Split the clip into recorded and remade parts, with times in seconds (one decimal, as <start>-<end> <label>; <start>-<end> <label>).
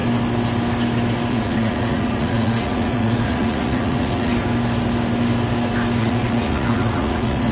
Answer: 0.0-1.3 recorded; 1.3-4.3 remade; 4.3-6.0 recorded; 6.0-7.5 remade